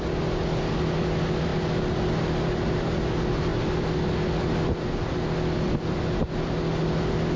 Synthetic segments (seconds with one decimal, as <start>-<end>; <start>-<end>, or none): none